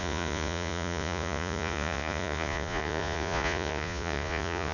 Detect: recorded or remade remade